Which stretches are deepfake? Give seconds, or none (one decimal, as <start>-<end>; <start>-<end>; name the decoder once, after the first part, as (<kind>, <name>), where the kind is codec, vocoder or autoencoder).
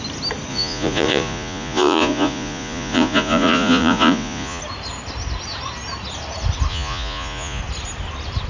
0.5-4.6 (vocoder, Vocos); 6.7-7.6